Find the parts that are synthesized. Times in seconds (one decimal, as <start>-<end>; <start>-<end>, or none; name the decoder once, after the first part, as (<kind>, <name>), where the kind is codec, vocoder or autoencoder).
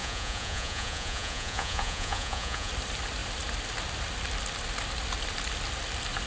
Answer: 0.0-2.7 (vocoder, Vocos)